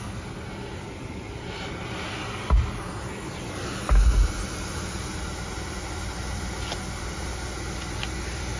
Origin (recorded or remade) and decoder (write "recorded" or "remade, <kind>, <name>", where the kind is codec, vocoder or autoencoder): recorded